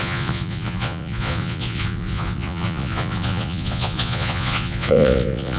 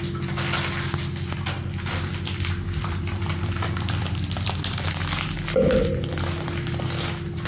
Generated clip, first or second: first